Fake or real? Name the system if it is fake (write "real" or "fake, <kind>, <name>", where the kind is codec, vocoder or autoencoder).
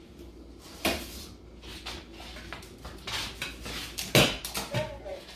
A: real